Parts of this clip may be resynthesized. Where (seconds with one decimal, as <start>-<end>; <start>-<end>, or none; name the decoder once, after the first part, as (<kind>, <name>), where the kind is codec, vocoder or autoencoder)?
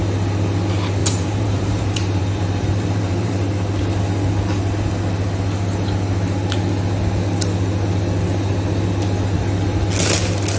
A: 1.0-3.3 (vocoder, BigVGAN v2)